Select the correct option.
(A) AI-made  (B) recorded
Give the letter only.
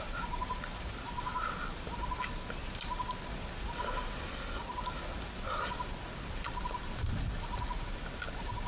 B